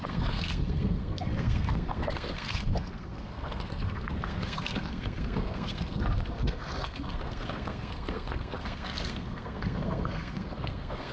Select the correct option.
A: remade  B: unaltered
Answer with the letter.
A